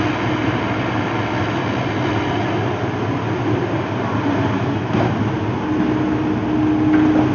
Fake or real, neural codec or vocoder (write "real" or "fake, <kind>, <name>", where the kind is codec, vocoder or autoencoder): real